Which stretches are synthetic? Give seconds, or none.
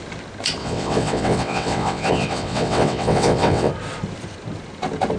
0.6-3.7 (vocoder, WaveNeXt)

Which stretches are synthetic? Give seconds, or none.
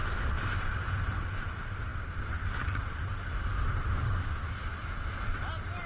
none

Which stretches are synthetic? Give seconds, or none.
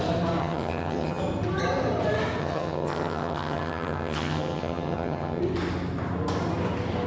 0.4-1.2 (vocoder, HiFi-GAN); 2.4-5.4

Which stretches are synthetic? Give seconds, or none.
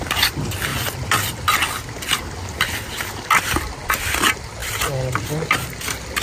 none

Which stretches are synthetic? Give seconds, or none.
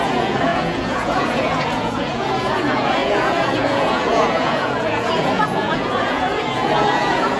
0.0-7.4 (vocoder, Vocos)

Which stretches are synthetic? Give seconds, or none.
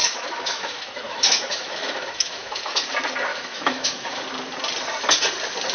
0.0-2.8 (autoencoder, DAC-VAE); 3.3-4.2